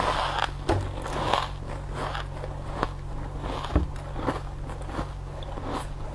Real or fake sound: real